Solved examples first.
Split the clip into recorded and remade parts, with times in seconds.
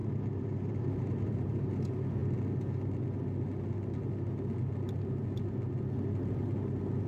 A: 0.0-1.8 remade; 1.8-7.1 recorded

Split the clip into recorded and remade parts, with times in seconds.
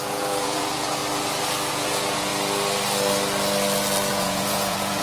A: 0.0-1.0 remade; 1.0-1.7 recorded; 1.7-2.3 remade; 2.3-4.1 recorded; 4.1-5.0 remade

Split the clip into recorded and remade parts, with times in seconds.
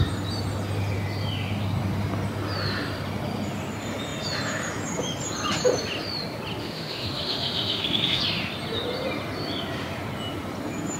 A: 0.0-6.6 recorded; 6.6-8.2 remade; 8.2-11.0 recorded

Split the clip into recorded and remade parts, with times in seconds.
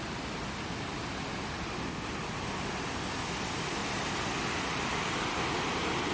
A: 0.0-6.1 recorded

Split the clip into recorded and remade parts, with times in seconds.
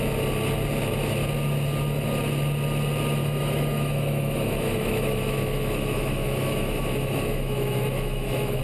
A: 0.0-3.2 recorded; 3.2-8.6 remade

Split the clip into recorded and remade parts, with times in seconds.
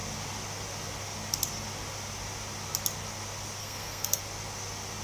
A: 0.0-3.6 recorded; 3.6-4.2 remade; 4.2-5.0 recorded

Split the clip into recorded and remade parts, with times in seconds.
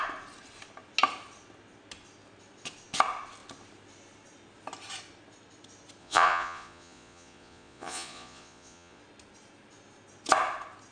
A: 0.0-6.0 recorded; 6.0-9.0 remade; 9.0-10.9 recorded